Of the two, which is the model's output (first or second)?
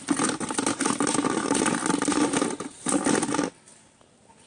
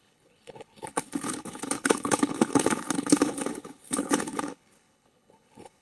second